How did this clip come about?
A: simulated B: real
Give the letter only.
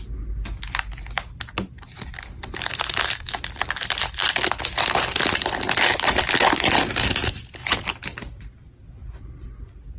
B